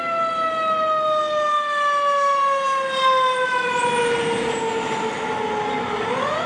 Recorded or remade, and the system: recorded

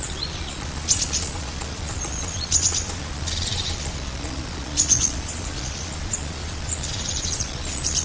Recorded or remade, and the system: remade, vocoder, Vocos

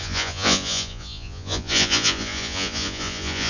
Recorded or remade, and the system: remade, vocoder, Vocos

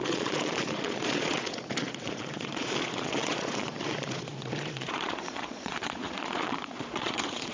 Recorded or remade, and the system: remade, vocoder, Vocos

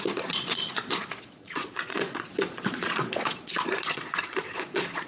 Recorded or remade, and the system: remade, vocoder, Vocos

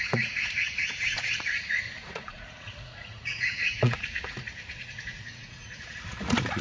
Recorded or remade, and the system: remade, vocoder, Vocos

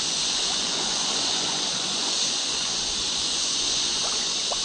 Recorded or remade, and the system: remade, vocoder, Vocos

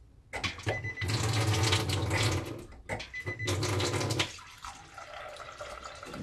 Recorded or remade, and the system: recorded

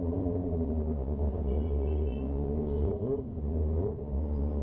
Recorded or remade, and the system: remade, vocoder, Vocos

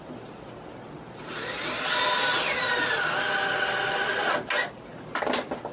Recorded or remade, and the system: recorded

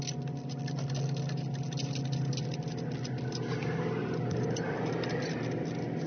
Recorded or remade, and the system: recorded